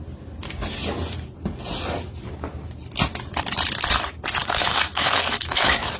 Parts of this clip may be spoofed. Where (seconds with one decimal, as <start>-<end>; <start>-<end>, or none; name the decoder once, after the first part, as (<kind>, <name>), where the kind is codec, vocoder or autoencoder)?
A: 4.4-6.0 (autoencoder, DAC-VAE)